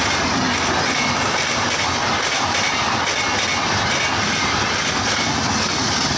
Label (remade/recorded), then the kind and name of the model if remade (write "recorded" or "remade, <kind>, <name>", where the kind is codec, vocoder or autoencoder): recorded